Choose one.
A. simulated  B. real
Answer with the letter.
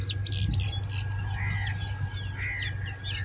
B